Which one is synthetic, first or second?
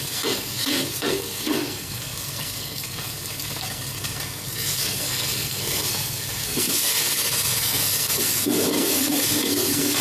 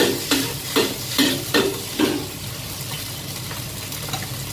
first